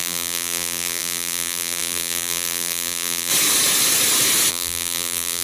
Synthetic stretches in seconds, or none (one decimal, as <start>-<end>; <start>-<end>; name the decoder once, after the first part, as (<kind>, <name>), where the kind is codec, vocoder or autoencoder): 0.0-3.3 (vocoder, BigVGAN v2); 4.5-5.4